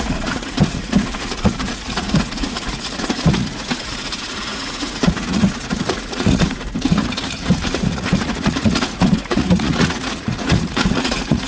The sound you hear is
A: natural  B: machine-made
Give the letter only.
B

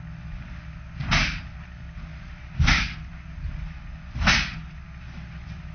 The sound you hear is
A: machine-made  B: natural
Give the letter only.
B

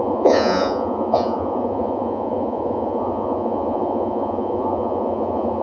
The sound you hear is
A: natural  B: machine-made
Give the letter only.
B